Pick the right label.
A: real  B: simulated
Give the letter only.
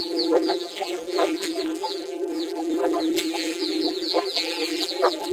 B